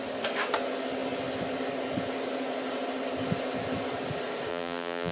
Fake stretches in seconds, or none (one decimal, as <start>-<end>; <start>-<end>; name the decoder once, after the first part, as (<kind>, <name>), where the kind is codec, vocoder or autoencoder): 4.5-5.1 (vocoder, BigVGAN v2)